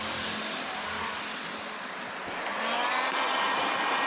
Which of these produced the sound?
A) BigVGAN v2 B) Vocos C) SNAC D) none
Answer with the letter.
D